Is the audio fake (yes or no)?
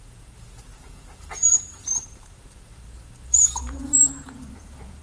yes